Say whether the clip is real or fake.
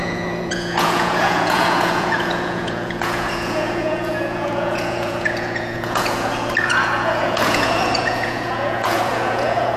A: fake